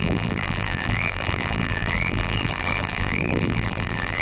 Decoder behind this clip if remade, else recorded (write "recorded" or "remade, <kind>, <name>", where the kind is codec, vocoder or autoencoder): remade, vocoder, BigVGAN v2